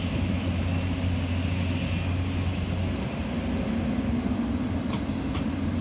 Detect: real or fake real